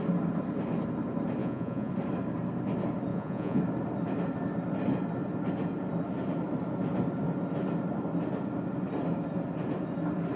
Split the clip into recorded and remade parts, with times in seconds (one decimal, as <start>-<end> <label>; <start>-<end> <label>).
0.0-1.4 recorded; 1.4-1.9 remade; 1.9-3.1 recorded; 3.1-3.6 remade; 3.6-10.4 recorded